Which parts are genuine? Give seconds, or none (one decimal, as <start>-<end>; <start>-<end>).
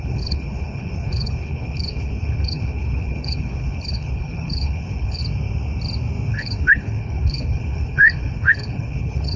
5.2-6.3